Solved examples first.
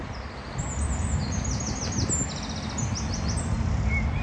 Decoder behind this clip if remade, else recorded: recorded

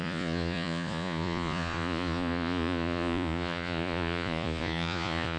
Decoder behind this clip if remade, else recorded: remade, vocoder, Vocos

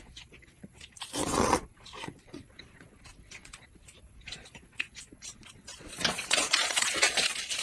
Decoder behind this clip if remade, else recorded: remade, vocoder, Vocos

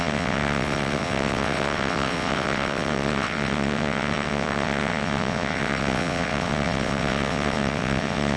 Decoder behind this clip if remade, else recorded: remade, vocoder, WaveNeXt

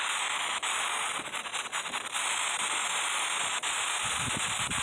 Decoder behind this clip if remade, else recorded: recorded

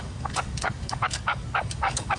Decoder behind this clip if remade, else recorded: remade, codec, DAC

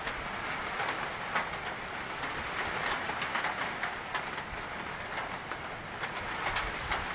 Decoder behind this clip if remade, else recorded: recorded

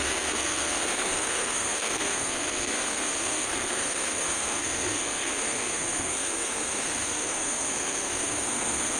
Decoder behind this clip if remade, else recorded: remade, codec, SNAC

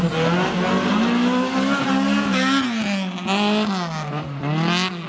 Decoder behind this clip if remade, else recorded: recorded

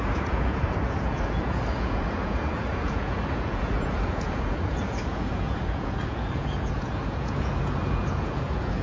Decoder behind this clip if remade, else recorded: remade, vocoder, Vocos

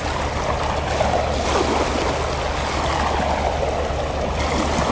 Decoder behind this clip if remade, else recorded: recorded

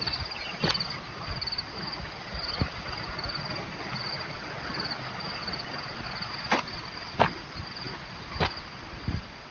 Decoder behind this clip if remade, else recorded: recorded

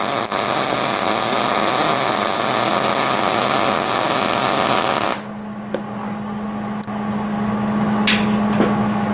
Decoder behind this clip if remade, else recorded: recorded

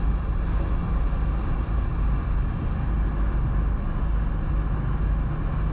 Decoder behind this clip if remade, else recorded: recorded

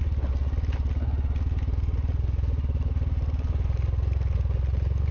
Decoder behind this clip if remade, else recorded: recorded